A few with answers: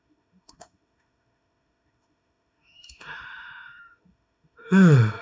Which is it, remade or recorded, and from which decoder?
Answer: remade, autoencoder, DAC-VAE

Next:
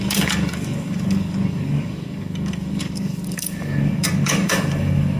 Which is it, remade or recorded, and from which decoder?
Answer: remade, codec, DAC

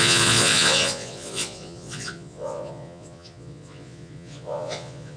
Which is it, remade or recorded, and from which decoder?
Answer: remade, vocoder, Vocos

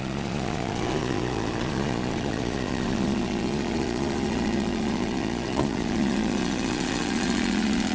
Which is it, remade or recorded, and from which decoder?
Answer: remade, vocoder, Vocos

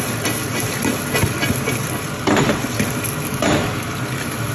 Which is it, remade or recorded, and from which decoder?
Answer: recorded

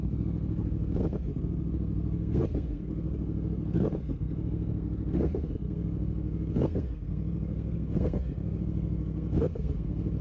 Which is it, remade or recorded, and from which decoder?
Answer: remade, codec, SNAC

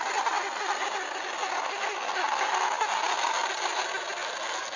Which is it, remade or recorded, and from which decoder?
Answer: recorded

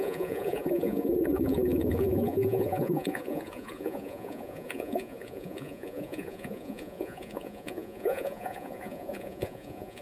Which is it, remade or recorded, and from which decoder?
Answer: remade, vocoder, Vocos